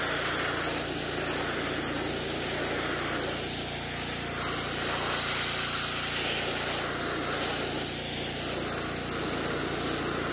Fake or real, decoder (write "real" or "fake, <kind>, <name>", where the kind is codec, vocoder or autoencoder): real